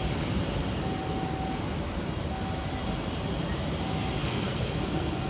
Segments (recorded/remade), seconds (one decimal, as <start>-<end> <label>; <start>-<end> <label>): 0.0-4.2 recorded; 4.2-5.3 remade